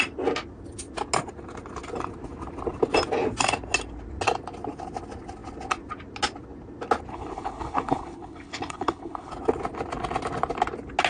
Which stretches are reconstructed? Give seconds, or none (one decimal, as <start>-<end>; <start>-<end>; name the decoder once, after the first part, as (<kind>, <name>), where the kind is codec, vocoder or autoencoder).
7.1-9.3 (codec, HILCodec)